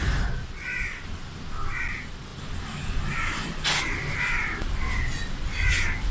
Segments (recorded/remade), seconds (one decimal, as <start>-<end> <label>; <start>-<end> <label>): 0.0-6.1 recorded